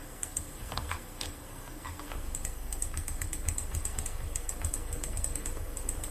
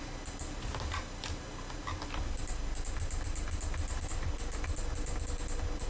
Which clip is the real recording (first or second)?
second